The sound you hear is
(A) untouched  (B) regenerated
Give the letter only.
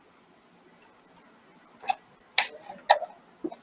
A